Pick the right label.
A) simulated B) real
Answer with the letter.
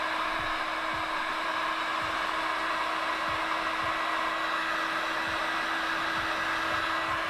B